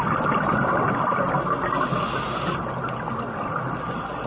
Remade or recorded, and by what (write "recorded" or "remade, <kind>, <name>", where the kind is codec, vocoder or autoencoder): recorded